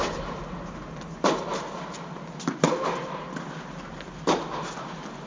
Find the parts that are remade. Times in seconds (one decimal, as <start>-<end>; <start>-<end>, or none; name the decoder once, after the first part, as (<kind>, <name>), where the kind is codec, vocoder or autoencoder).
none